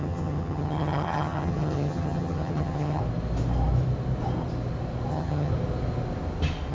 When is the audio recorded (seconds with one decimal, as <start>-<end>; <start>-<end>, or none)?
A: 3.0-5.1; 5.5-6.7